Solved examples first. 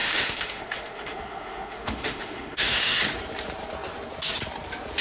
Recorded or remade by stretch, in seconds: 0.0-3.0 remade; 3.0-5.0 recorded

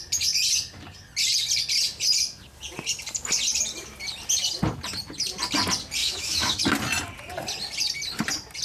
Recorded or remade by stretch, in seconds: 0.0-6.0 recorded; 6.0-6.6 remade; 6.6-8.6 recorded

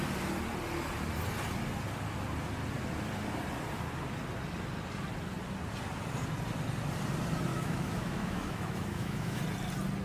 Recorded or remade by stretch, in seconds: 0.0-7.5 recorded; 7.5-9.4 remade; 9.4-10.0 recorded

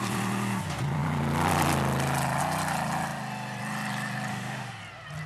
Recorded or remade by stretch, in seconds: 0.0-4.3 recorded; 4.3-4.8 remade; 4.8-5.3 recorded